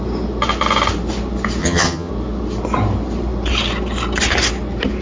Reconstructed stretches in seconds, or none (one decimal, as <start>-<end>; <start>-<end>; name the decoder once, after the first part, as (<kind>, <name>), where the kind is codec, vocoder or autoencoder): 1.6-2.1 (vocoder, HiFi-GAN)